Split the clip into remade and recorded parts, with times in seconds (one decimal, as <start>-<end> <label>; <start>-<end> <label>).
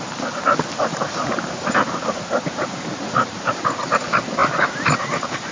0.0-0.9 recorded; 0.9-3.6 remade; 3.6-5.5 recorded